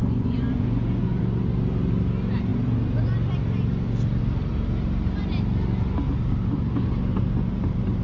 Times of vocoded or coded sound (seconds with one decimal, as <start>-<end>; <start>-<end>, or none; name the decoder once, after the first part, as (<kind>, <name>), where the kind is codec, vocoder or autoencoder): 0.0-1.2 (vocoder, Vocos)